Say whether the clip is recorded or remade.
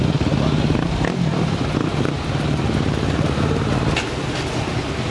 recorded